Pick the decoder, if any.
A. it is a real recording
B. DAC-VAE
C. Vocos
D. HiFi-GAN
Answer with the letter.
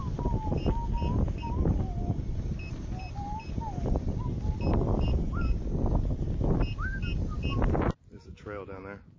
A